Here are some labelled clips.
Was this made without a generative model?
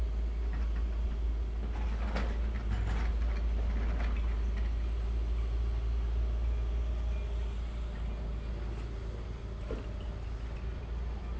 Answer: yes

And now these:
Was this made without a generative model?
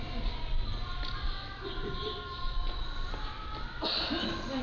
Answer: yes